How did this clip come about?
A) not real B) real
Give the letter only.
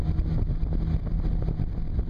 B